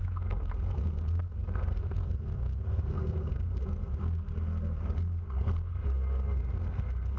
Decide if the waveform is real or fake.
fake